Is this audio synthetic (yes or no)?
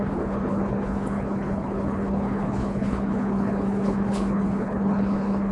yes